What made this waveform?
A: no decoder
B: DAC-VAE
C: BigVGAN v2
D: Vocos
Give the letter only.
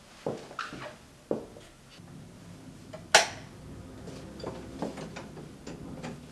A